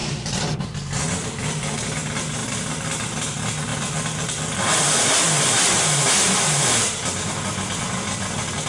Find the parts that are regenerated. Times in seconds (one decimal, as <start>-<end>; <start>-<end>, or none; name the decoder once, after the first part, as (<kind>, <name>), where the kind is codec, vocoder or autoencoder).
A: 0.0-0.6 (vocoder, BigVGAN v2); 2.4-3.3; 3.7-6.9